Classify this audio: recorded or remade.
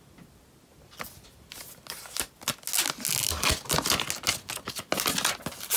recorded